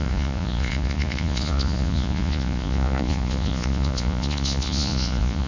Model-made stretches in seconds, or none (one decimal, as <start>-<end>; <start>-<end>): 0.0-5.5